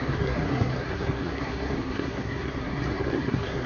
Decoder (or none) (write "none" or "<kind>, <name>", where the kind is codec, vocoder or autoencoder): codec, SNAC